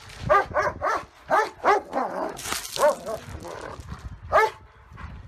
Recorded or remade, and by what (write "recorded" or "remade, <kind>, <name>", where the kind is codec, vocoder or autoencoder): recorded